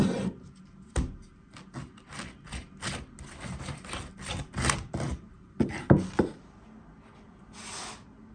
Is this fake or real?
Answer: real